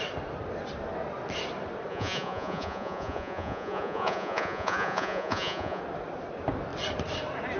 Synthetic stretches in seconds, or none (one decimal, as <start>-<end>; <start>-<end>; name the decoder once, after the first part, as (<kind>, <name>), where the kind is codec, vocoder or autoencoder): 1.9-5.8 (vocoder, Vocos)